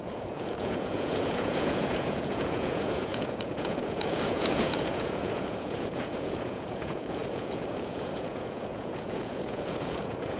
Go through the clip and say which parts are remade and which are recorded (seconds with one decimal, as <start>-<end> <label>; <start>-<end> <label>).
0.0-10.4 remade